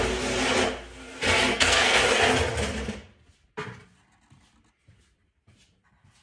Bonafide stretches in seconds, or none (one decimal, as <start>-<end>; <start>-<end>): 0.0-1.5; 2.0-6.2

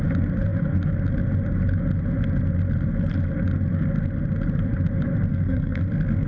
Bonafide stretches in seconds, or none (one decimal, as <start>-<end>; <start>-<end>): 0.0-5.3; 5.8-6.3